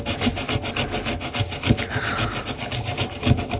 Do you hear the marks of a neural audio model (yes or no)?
no